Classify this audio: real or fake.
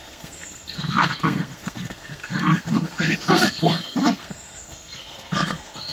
fake